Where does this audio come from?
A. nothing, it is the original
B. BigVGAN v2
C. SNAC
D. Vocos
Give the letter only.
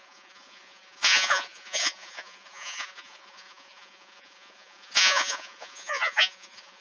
D